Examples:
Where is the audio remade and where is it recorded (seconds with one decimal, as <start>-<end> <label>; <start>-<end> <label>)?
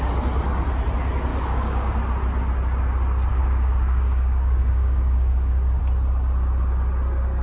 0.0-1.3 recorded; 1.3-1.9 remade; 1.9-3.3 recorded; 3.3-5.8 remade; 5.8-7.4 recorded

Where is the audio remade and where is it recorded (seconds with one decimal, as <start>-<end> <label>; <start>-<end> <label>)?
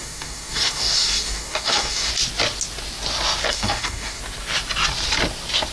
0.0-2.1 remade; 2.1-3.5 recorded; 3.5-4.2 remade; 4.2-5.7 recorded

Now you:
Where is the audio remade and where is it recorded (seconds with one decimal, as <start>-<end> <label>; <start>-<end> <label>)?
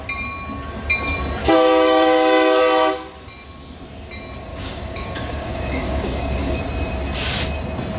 0.0-1.4 recorded; 1.4-2.6 remade; 2.6-4.5 recorded; 4.5-6.6 remade; 6.6-8.0 recorded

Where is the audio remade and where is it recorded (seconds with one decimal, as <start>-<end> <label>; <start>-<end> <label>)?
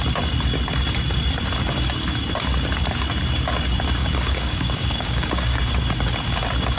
0.0-4.0 recorded; 4.0-5.6 remade; 5.6-6.8 recorded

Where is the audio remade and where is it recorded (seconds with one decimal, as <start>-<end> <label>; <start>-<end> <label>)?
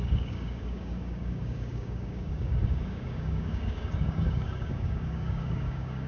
0.0-6.1 remade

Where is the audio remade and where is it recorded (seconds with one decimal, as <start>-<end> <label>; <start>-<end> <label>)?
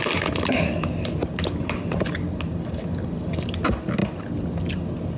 0.0-5.2 recorded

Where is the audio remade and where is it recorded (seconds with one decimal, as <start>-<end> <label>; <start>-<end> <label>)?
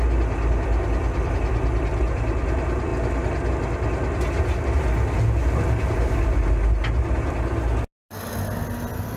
0.0-9.2 recorded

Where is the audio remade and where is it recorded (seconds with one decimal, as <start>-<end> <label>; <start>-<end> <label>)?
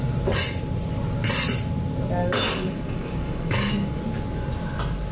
0.0-2.2 recorded; 2.2-4.0 remade; 4.0-5.1 recorded